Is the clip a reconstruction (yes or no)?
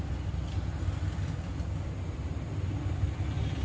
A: no